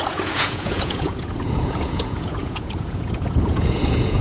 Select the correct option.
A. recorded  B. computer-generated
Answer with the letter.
B